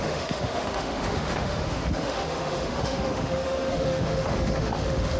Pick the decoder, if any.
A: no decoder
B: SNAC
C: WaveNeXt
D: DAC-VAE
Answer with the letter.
D